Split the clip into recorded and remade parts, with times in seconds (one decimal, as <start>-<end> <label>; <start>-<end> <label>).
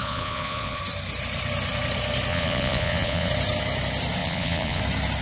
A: 0.0-0.8 remade; 0.8-2.3 recorded; 2.3-3.3 remade; 3.3-4.2 recorded; 4.2-4.8 remade; 4.8-5.2 recorded